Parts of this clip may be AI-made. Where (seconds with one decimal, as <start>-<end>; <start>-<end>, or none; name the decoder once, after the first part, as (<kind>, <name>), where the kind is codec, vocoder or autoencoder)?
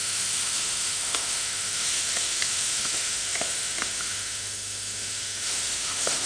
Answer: 0.0-6.3 (autoencoder, DAC-VAE)